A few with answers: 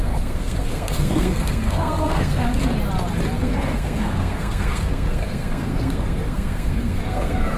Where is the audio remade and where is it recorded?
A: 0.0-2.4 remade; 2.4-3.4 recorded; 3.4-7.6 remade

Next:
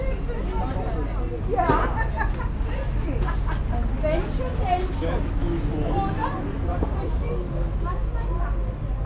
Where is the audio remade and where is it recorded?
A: 0.0-6.7 recorded; 6.7-7.3 remade; 7.3-9.1 recorded